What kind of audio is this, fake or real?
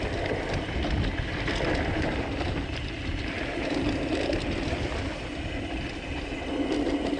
real